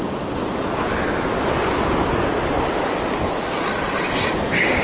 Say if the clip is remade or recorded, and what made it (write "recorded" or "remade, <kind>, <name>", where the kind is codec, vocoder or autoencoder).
recorded